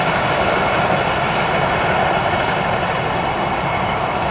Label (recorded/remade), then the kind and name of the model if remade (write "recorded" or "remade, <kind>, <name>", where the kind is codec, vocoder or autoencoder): recorded